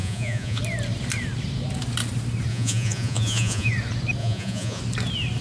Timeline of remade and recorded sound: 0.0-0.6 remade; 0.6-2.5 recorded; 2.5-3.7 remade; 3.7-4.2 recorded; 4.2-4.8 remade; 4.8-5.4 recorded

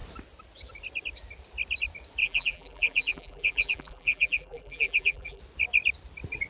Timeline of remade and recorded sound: 0.0-2.2 recorded; 2.2-5.4 remade; 5.4-6.5 recorded